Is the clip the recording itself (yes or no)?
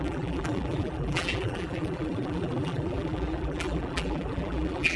no